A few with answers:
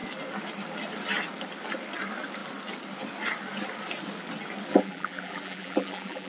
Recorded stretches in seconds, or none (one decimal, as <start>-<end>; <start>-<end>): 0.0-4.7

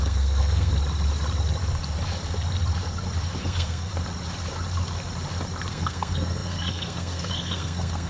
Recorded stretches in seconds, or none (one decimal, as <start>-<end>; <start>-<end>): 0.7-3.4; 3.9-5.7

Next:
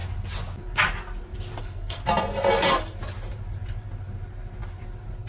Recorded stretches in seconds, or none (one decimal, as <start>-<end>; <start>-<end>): 0.0-1.6; 2.0-5.3